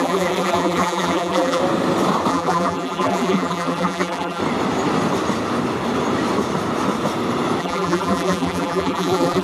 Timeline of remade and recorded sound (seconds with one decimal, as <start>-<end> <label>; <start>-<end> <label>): 0.0-1.6 remade; 1.6-2.3 recorded; 2.3-4.4 remade; 4.4-7.6 recorded; 7.6-9.4 remade